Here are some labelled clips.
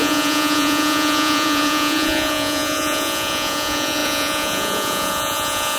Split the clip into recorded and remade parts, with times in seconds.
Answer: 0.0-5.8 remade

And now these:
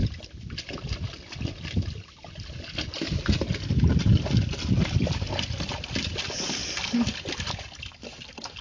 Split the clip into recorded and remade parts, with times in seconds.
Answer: 0.0-8.6 recorded

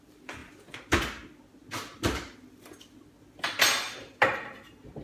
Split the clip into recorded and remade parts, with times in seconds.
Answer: 0.0-5.0 recorded

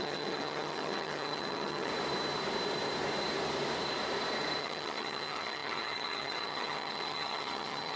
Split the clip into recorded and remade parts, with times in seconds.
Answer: 0.0-1.9 remade; 1.9-4.6 recorded; 4.6-8.0 remade

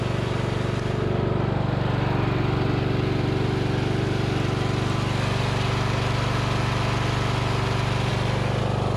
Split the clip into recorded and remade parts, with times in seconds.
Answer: 0.0-9.0 recorded

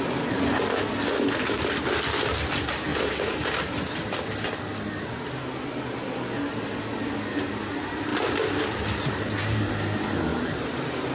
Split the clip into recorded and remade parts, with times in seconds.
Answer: 0.0-2.9 recorded; 2.9-3.8 remade; 3.8-10.3 recorded; 10.3-11.1 remade

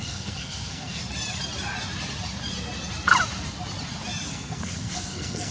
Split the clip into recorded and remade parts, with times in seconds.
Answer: 0.0-1.0 remade; 1.0-4.3 recorded; 4.3-5.5 remade

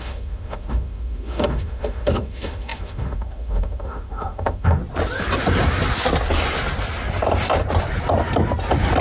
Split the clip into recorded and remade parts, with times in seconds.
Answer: 0.0-4.8 remade; 4.8-9.0 recorded